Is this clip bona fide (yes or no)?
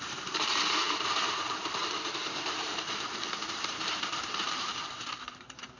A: no